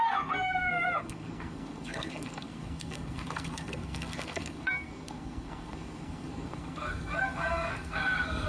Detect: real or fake fake